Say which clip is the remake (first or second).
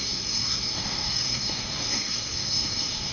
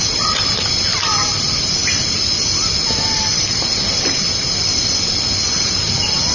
first